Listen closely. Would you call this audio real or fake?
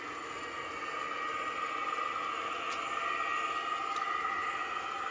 real